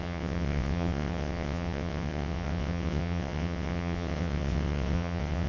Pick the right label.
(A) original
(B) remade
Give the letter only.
B